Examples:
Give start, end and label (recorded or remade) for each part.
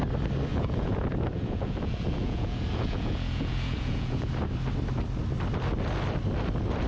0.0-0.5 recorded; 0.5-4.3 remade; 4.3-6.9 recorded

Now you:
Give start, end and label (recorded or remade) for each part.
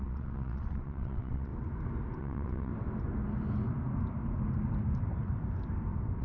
0.0-1.5 remade; 1.5-2.2 recorded; 2.2-2.7 remade; 2.7-6.2 recorded